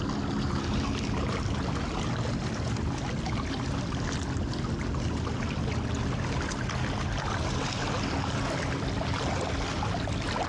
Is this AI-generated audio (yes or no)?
no